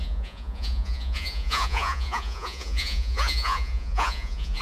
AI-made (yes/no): yes